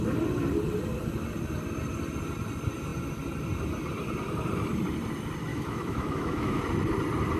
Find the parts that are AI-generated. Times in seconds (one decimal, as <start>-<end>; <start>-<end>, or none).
5.5-6.6